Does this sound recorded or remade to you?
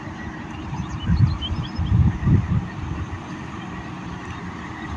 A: remade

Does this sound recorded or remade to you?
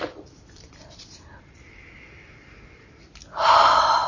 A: remade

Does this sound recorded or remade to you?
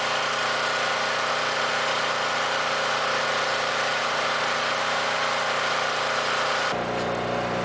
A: recorded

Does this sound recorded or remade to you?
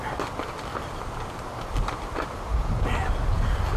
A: recorded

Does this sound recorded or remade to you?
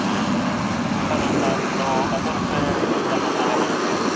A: recorded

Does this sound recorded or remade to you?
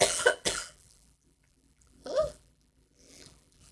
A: remade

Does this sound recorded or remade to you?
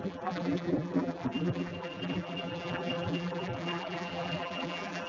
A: remade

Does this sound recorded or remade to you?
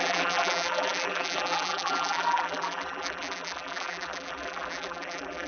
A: remade